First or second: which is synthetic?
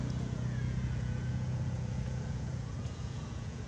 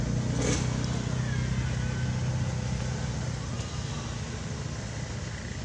first